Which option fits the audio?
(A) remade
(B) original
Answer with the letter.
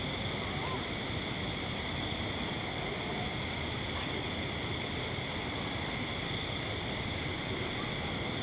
B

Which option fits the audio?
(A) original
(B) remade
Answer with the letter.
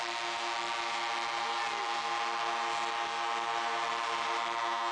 A